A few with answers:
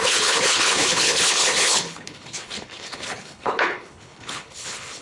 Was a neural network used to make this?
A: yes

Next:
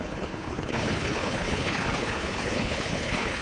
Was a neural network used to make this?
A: yes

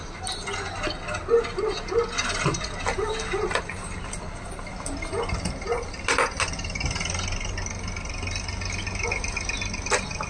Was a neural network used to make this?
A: no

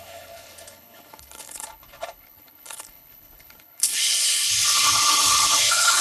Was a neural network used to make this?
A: yes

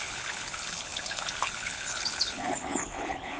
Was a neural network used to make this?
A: yes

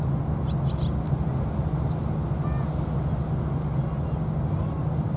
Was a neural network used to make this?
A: no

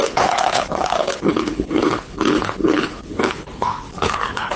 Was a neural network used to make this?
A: yes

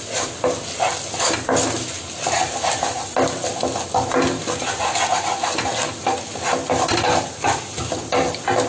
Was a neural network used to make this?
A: no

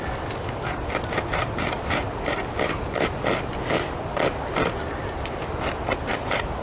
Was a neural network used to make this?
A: no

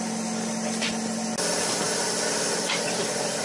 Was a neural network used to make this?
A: no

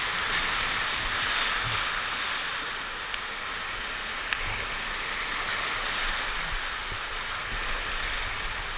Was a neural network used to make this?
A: no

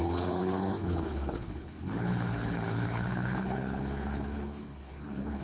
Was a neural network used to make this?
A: yes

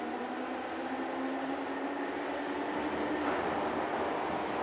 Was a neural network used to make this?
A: no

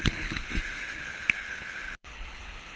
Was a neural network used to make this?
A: yes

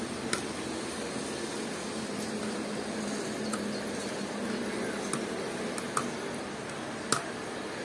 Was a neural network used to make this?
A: no